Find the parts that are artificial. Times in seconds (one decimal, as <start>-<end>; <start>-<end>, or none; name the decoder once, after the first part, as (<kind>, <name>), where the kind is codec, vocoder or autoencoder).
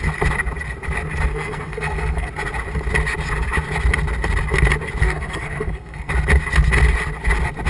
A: 1.3-2.3 (codec, SNAC); 5.0-6.1